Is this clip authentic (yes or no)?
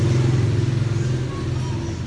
yes